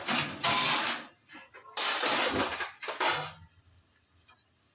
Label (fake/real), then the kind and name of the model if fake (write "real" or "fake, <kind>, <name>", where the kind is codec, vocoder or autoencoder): real